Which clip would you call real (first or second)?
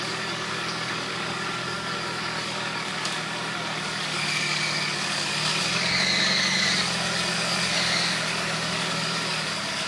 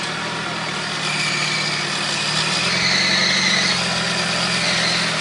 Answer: second